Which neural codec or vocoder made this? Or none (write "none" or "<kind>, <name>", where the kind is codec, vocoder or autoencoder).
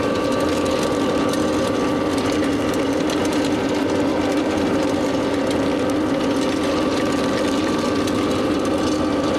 none